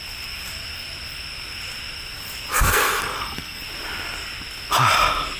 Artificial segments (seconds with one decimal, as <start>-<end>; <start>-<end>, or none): 2.5-3.6